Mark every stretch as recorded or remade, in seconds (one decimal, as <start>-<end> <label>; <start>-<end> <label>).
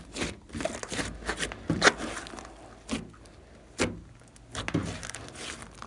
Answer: 0.0-5.9 recorded